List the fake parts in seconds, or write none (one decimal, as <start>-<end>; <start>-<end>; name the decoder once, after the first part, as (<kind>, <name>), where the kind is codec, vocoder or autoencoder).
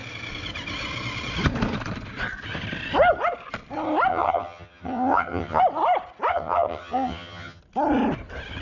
4.1-5.6 (vocoder, HiFi-GAN); 6.3-7.6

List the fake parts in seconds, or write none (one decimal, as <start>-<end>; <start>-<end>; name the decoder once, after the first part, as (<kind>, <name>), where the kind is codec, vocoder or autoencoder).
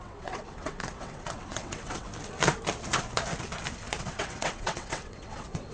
0.0-2.1 (vocoder, WaveNeXt); 4.0-5.7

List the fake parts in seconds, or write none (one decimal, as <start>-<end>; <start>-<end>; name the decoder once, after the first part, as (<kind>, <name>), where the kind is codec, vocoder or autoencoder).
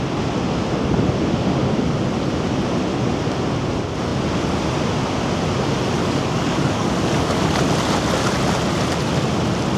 6.0-7.4 (codec, DAC)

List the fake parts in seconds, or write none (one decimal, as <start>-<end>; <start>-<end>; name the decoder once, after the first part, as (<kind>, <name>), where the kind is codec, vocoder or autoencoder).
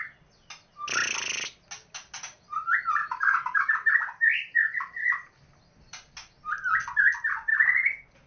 3.0-3.7 (autoencoder, DAC-VAE)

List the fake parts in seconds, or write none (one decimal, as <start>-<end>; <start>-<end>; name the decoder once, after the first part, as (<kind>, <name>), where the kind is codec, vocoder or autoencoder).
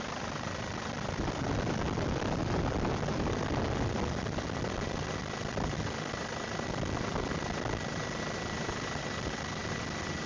none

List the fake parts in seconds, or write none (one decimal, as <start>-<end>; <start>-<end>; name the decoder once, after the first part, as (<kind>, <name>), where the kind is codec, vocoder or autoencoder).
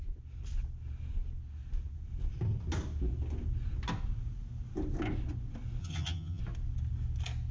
5.8-6.4 (vocoder, HiFi-GAN)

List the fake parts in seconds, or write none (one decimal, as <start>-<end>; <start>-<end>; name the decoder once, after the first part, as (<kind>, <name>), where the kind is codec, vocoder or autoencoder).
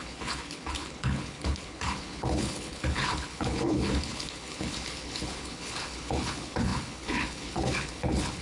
0.0-8.4 (codec, HILCodec)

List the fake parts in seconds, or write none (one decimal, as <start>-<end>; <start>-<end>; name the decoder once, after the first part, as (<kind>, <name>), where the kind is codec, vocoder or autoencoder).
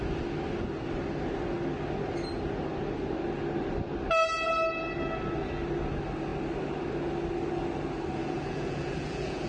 8.2-9.5 (vocoder, Vocos)